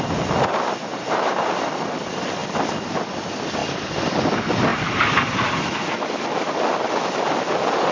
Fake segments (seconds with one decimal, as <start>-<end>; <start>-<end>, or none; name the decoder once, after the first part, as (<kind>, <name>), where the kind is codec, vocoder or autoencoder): 0.9-1.5 (vocoder, BigVGAN v2); 4.7-5.3